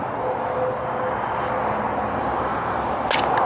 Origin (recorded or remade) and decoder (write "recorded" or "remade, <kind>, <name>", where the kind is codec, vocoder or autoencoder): recorded